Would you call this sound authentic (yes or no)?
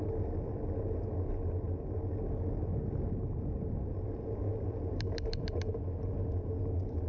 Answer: yes